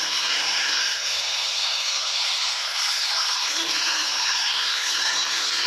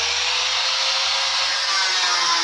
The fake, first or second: first